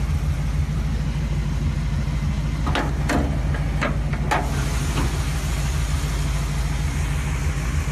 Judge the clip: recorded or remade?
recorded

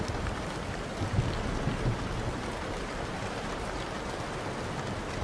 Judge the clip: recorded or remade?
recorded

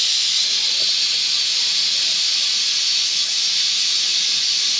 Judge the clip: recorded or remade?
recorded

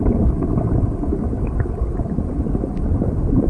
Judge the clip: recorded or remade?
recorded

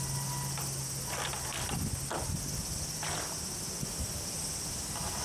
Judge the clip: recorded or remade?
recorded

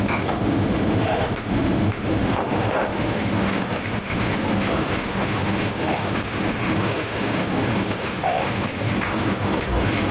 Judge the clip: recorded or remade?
remade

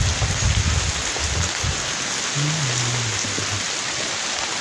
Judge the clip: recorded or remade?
recorded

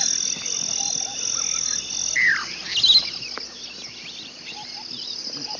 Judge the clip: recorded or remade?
recorded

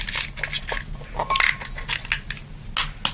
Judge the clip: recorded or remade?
recorded